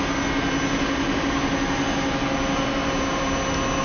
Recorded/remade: recorded